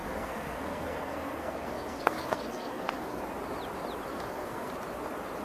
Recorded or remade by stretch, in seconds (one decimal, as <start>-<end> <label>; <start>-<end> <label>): 0.0-3.2 remade; 3.2-4.1 recorded; 4.1-4.7 remade; 4.7-5.4 recorded